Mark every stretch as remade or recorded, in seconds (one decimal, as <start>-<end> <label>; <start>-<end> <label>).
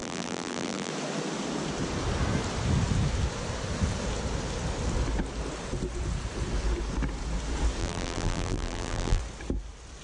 0.0-0.9 remade; 0.9-7.8 recorded; 7.8-9.2 remade; 9.2-10.0 recorded